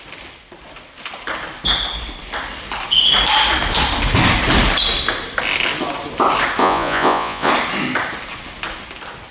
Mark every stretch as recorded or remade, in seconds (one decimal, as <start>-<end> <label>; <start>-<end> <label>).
0.0-6.6 recorded; 6.6-7.5 remade; 7.5-9.3 recorded